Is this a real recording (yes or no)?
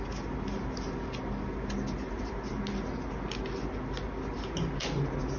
yes